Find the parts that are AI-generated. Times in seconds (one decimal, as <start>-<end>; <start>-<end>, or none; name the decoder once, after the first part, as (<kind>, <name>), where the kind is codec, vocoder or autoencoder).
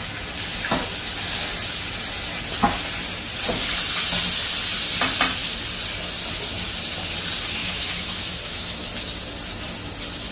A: 7.6-8.9 (autoencoder, DAC-VAE)